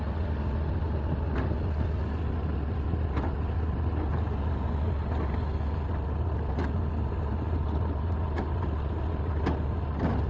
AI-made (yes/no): no